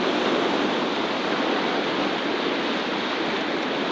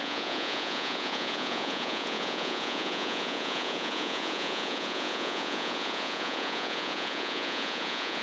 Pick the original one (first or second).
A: first